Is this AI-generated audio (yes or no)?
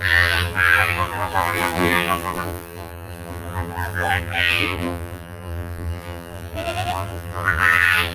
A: yes